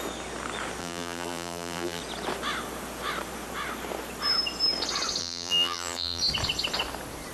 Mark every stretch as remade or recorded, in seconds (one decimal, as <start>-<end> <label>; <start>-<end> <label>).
0.0-0.8 recorded; 0.8-2.0 remade; 2.0-5.2 recorded; 5.2-6.2 remade; 6.2-7.3 recorded